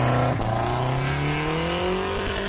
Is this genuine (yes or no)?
yes